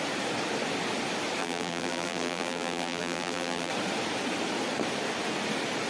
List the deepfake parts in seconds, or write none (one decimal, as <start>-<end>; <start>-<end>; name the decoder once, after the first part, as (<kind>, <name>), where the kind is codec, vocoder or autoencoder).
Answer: 1.4-3.7 (vocoder, BigVGAN v2)